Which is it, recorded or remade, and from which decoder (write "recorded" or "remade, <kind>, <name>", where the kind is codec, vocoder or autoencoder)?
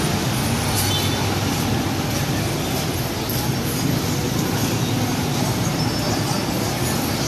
recorded